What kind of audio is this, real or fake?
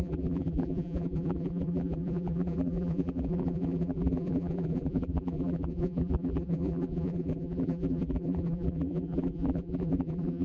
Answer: fake